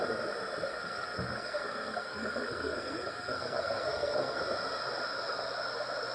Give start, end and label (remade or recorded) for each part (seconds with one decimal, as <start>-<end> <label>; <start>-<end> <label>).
0.0-0.7 recorded; 0.7-4.4 remade; 4.4-6.1 recorded